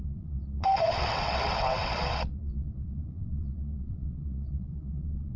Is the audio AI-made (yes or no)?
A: yes